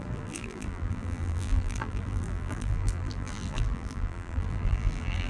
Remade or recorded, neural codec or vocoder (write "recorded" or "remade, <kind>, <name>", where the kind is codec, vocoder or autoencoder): remade, vocoder, BigVGAN v2